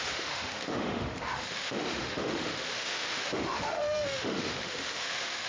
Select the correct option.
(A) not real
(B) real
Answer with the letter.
A